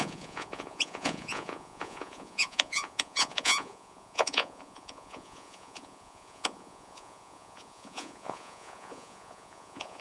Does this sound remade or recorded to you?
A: remade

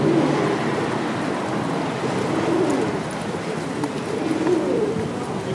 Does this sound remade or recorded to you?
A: recorded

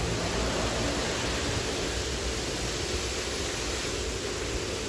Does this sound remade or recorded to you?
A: recorded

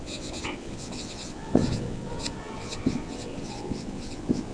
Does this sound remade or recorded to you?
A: remade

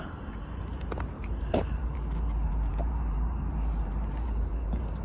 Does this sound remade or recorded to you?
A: remade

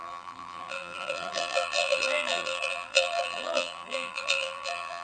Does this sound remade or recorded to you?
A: remade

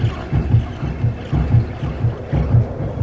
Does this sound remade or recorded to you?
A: recorded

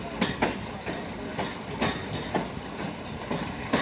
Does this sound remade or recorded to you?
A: recorded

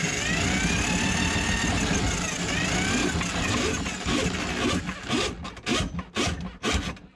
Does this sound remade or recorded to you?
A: recorded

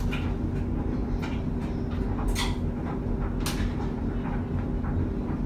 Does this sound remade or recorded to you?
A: recorded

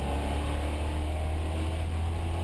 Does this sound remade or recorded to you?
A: recorded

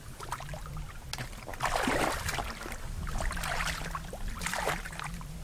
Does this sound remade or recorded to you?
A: recorded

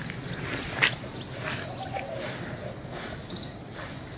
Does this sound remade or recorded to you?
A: recorded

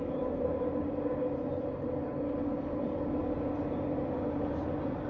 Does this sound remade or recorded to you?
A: recorded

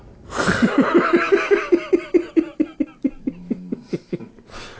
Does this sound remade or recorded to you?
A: recorded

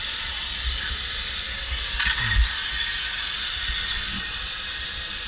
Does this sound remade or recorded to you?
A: recorded